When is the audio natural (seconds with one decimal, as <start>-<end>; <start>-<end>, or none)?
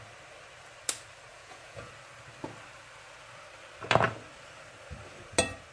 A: 0.0-1.3; 1.9-5.7